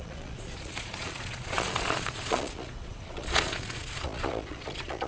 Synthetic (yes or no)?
yes